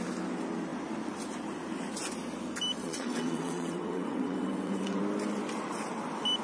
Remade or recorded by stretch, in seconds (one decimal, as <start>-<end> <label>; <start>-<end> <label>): 0.0-2.8 recorded; 2.8-5.0 remade; 5.0-6.4 recorded